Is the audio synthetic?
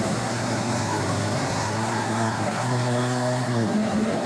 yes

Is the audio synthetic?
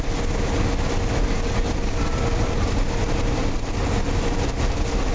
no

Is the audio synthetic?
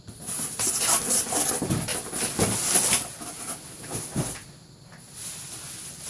no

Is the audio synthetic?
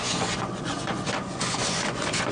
yes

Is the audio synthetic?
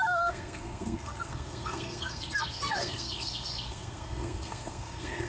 yes